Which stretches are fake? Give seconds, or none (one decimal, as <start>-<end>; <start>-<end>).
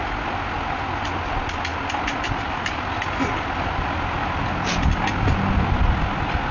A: none